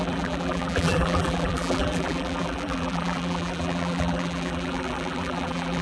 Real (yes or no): no